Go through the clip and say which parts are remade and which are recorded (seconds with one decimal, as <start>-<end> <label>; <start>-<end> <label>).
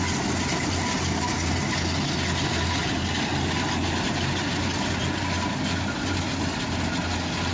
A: 0.0-7.5 recorded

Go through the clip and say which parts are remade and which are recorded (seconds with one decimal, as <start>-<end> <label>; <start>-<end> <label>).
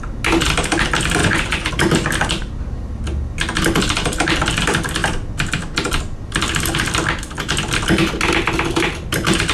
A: 0.0-1.2 recorded; 1.2-1.7 remade; 1.7-9.5 recorded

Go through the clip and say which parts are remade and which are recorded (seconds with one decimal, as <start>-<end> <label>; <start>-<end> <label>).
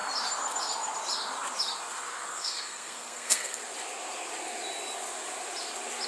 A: 0.0-2.3 recorded; 2.3-3.6 remade; 3.6-6.1 recorded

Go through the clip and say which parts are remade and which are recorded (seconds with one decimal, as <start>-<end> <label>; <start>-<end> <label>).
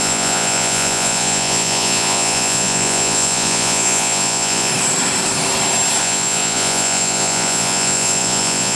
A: 0.0-4.7 remade; 4.7-6.0 recorded; 6.0-8.8 remade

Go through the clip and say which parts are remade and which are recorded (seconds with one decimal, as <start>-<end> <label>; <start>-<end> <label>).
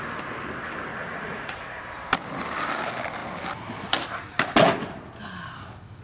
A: 0.0-0.9 recorded; 0.9-1.8 remade; 1.8-6.0 recorded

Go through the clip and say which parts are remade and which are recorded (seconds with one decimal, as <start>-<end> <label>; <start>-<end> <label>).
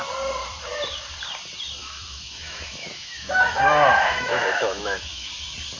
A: 0.0-1.8 recorded; 1.8-5.3 remade; 5.3-5.8 recorded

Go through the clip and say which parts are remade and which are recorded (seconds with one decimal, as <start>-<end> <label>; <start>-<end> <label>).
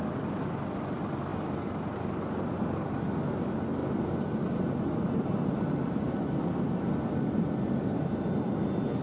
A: 0.0-3.8 recorded; 3.8-6.8 remade; 6.8-9.0 recorded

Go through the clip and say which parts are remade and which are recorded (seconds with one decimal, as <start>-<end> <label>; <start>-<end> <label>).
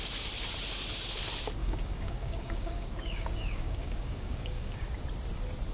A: 0.0-1.6 recorded; 1.6-4.8 remade; 4.8-5.7 recorded